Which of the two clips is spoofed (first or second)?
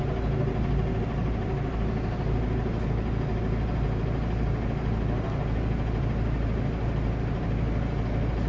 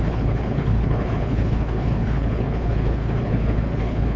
second